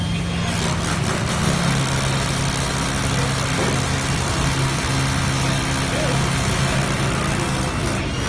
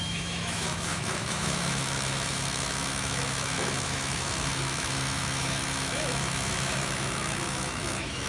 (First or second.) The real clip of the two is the first